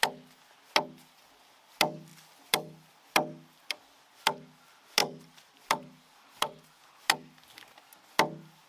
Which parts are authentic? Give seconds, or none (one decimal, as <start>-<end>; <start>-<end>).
0.0-5.0; 6.8-8.7